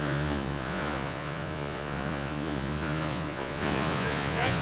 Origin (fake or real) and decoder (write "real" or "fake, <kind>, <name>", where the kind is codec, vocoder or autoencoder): fake, vocoder, Vocos